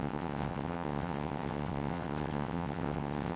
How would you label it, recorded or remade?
remade